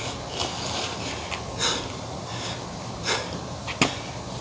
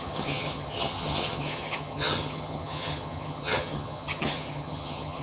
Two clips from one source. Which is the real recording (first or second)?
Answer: first